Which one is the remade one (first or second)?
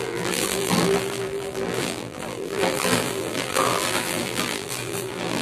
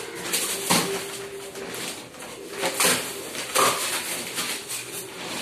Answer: first